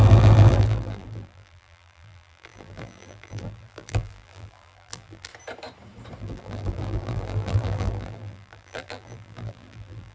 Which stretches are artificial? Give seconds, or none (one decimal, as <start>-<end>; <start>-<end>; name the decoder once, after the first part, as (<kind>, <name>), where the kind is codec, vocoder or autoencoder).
0.0-5.3 (vocoder, BigVGAN v2); 6.2-10.1